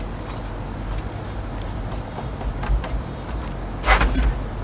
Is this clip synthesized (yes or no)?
no